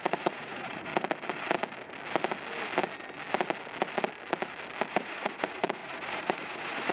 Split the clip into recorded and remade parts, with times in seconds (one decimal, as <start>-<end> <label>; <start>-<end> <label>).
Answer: 0.0-0.9 remade; 0.9-4.9 recorded; 4.9-6.9 remade